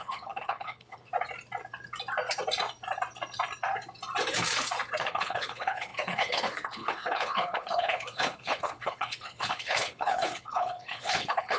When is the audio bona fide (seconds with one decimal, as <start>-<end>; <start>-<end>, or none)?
1.1-5.0